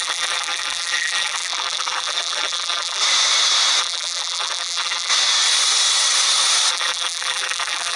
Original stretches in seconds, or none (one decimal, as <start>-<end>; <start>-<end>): 3.0-3.8; 5.1-6.7